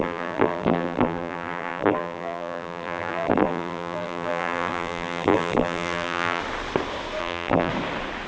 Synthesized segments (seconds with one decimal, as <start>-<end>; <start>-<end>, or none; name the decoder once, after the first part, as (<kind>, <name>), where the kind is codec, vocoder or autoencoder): 0.0-6.4 (vocoder, BigVGAN v2); 7.2-7.7